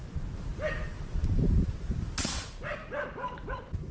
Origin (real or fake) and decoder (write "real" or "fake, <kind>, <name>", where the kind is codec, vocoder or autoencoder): real